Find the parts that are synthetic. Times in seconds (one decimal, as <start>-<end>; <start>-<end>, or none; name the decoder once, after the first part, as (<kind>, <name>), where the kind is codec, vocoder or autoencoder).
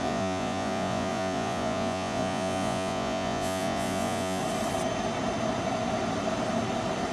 0.0-4.4 (vocoder, Vocos)